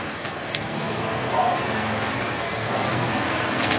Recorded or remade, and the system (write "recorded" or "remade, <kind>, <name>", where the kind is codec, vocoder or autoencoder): remade, codec, SNAC